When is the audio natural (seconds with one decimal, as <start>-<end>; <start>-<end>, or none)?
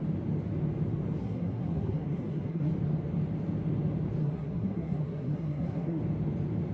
0.0-1.2; 2.7-4.2; 6.0-6.7